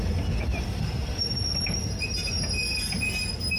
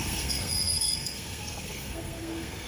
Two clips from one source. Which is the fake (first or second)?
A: second